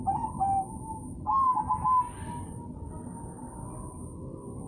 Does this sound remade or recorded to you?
recorded